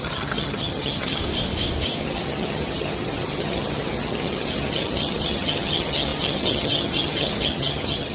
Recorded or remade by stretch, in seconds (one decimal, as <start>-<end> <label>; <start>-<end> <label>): 0.0-1.2 remade; 1.2-2.0 recorded; 2.0-8.1 remade